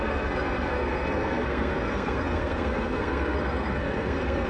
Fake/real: fake